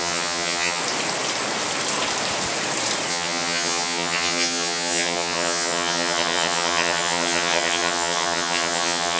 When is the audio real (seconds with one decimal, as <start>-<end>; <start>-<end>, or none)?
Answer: 0.8-3.1